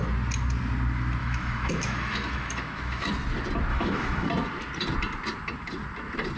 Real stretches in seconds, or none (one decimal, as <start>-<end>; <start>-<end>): 0.0-1.2; 3.1-3.7; 4.3-6.4